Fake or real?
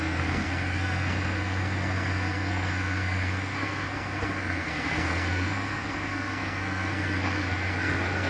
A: fake